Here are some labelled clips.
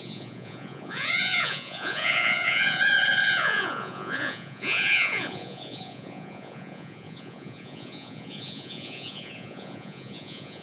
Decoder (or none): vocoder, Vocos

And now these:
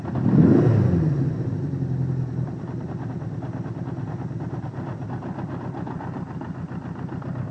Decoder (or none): none